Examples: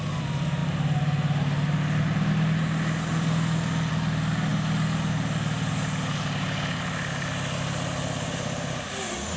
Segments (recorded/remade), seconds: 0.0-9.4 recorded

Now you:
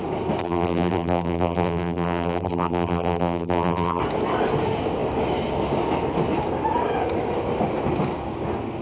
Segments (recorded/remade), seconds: 0.0-0.4 recorded; 0.4-4.0 remade; 4.0-8.8 recorded

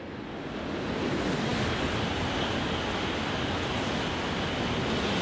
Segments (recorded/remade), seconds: 0.0-5.2 recorded

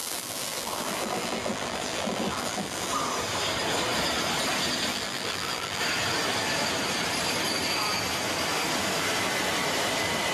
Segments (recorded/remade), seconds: 0.0-2.9 remade; 2.9-4.9 recorded; 4.9-5.8 remade; 5.8-10.3 recorded

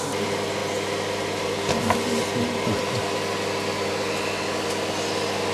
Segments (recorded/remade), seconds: 0.0-5.5 recorded

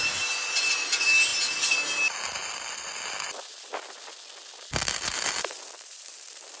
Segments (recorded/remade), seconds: 0.0-1.3 remade; 1.3-5.3 recorded; 5.3-6.6 remade

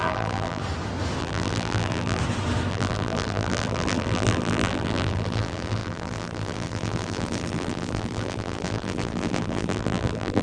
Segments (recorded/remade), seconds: 0.0-0.6 remade; 0.6-1.2 recorded; 1.2-2.2 remade; 2.2-2.7 recorded; 2.7-10.4 remade

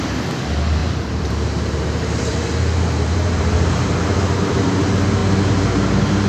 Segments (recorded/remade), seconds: 0.0-0.8 recorded; 0.8-4.6 remade; 4.6-6.3 recorded